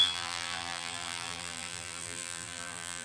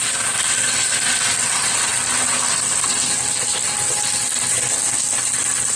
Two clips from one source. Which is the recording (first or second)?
second